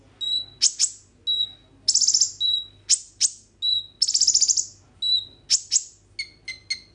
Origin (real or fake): real